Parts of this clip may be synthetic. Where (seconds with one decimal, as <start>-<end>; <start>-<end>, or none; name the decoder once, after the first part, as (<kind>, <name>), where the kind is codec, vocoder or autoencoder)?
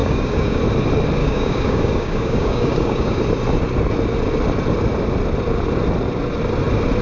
0.0-0.6 (codec, DAC); 1.2-3.2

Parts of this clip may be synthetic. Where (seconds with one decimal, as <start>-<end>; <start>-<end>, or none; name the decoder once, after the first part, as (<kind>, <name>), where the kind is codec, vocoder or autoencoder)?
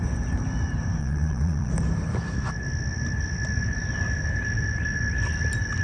1.0-1.7 (vocoder, Vocos)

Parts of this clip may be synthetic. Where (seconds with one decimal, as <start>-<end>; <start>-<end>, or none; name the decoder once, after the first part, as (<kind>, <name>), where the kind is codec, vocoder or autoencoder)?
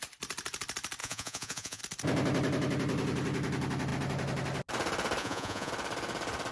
1.0-1.8 (vocoder, Vocos); 5.2-5.7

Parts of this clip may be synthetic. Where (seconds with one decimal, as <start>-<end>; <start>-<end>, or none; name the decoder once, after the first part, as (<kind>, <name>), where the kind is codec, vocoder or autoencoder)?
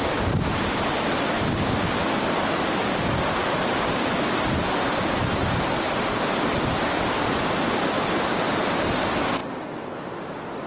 none